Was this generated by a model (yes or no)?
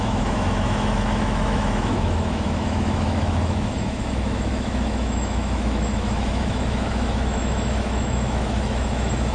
yes